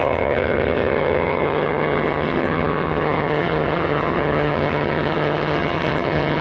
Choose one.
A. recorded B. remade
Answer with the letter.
B